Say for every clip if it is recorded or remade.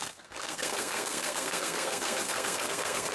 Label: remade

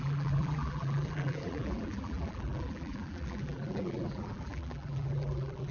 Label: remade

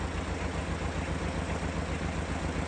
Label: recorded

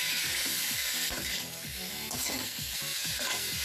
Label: remade